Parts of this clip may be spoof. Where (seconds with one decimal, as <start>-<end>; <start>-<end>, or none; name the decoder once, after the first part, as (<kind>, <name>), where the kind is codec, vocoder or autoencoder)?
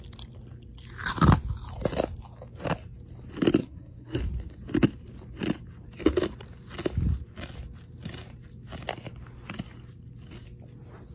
3.6-4.2 (codec, SNAC)